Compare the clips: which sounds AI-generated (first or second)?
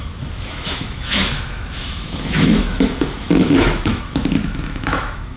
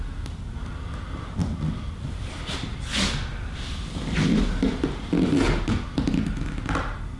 first